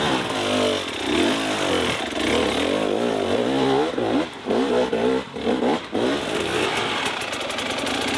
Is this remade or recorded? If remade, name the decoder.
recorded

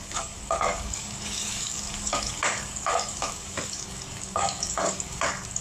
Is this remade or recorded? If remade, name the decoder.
remade, codec, DAC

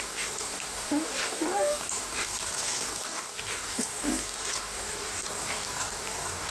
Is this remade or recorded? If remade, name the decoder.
remade, codec, DAC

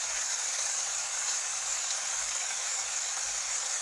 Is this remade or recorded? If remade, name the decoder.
remade, codec, DAC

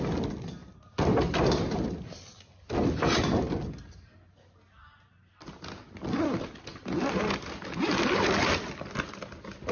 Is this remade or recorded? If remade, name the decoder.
recorded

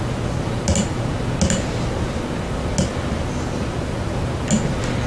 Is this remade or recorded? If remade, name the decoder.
recorded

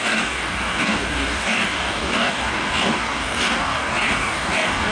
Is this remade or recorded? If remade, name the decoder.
remade, codec, DAC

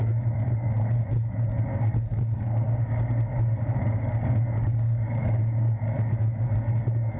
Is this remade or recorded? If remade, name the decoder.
remade, codec, DAC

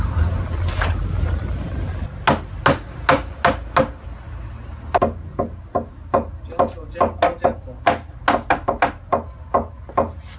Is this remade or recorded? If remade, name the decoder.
recorded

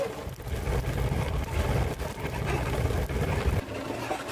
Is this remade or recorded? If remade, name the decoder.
recorded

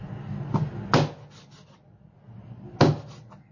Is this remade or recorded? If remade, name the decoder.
recorded